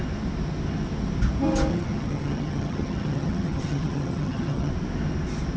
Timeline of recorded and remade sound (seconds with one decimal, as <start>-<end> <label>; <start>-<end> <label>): 0.0-1.7 recorded; 1.7-4.7 remade; 4.7-5.6 recorded